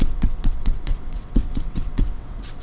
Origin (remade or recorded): remade